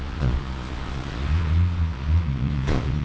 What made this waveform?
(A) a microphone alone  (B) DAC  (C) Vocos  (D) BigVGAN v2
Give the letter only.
C